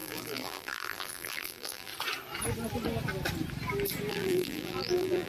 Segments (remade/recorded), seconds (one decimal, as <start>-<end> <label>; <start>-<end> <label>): 0.0-1.9 remade; 1.9-4.1 recorded; 4.1-5.3 remade